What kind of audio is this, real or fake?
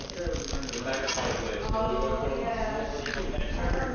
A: real